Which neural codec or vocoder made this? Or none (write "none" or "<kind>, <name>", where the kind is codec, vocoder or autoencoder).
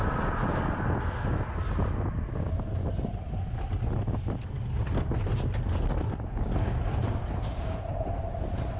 none